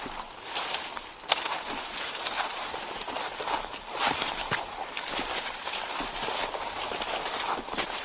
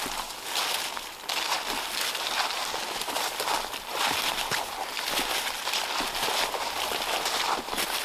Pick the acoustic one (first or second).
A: second